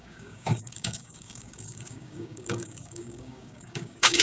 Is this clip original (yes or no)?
no